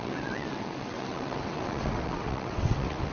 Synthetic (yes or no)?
yes